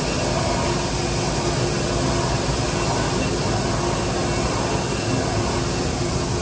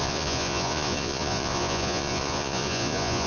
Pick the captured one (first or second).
first